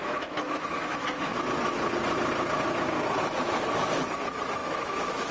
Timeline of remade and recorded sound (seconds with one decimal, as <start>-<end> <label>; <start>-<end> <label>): 0.0-1.3 remade; 1.3-3.2 recorded; 3.2-5.3 remade